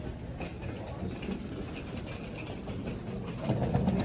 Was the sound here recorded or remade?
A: recorded